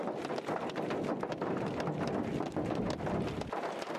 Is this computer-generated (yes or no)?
no